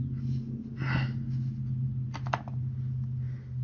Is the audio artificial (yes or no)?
no